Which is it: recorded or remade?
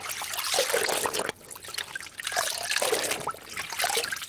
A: recorded